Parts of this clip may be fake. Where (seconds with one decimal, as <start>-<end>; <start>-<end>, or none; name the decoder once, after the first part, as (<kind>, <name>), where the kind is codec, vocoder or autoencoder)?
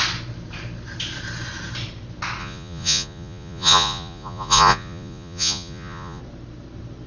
2.4-6.2 (vocoder, Vocos)